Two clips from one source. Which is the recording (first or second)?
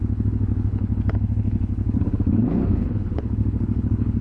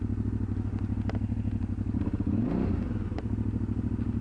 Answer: second